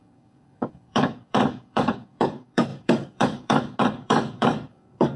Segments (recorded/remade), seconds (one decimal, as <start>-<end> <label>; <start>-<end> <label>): 0.0-5.2 remade